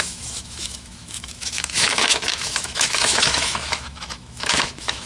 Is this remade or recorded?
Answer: remade